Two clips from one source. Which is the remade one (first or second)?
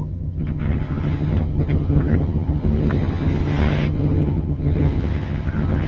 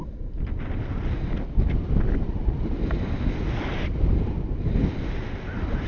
first